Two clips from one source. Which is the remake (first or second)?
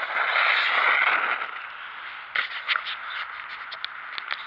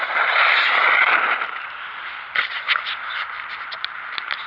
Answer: second